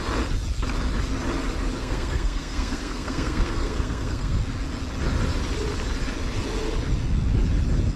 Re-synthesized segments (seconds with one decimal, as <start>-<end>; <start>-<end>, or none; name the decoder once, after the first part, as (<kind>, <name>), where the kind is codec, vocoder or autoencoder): 1.8-4.4 (codec, SNAC)